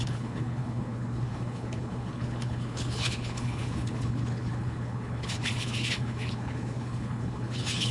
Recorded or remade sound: remade